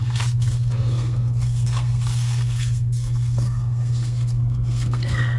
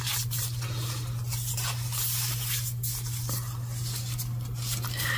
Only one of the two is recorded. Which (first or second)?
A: second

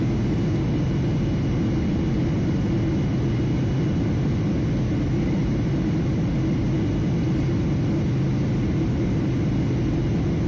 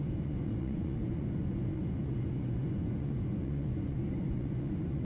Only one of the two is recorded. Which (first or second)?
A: first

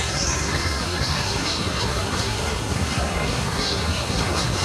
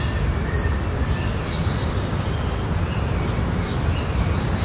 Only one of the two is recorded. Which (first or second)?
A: second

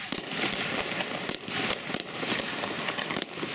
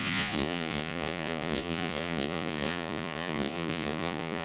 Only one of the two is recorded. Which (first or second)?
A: first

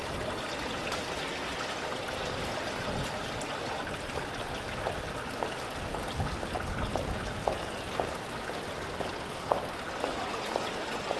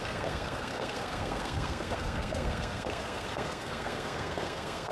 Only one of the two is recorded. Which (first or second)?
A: first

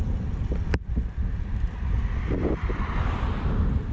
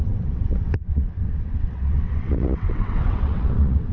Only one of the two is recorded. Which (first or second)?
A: first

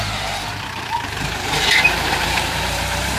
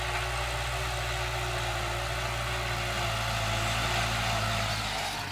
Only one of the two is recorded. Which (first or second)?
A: second